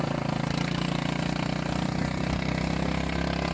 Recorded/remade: recorded